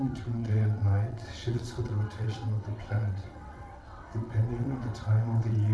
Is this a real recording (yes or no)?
no